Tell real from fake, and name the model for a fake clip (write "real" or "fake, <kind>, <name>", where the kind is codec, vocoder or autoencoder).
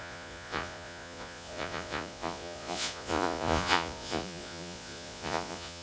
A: fake, vocoder, Vocos